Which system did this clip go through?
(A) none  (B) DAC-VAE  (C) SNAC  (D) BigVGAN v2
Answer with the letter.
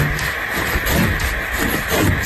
A